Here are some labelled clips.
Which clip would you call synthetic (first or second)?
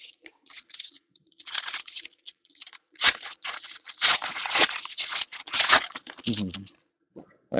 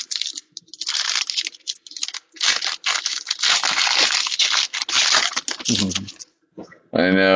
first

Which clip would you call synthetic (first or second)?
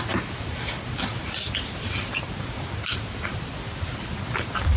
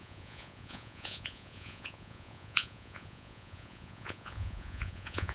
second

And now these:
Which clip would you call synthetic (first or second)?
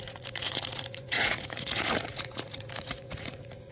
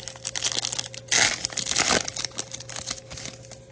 first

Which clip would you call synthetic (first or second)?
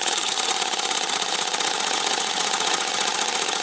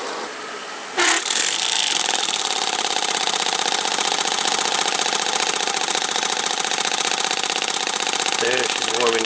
first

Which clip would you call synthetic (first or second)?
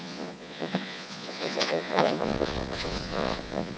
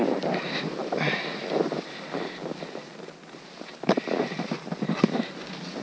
first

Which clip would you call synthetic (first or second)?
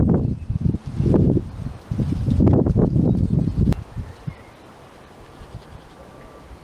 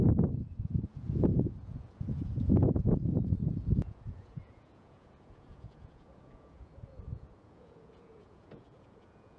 second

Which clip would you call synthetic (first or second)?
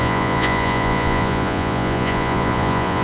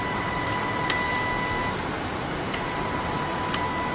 first